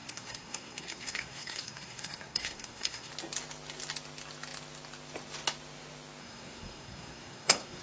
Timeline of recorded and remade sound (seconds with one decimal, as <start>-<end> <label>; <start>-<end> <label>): 0.0-3.1 remade; 3.1-6.2 recorded; 6.2-7.8 remade